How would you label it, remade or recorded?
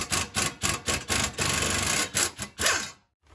recorded